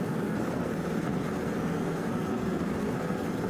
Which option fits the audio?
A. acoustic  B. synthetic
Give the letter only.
B